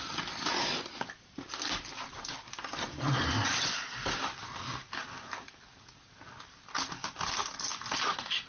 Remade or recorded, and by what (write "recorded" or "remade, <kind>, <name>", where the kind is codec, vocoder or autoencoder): recorded